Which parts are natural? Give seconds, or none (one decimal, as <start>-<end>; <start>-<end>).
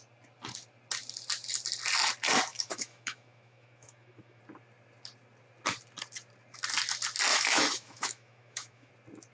0.0-2.5; 4.4-7.3; 8.9-9.3